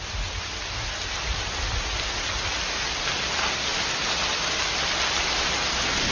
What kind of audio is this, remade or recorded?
recorded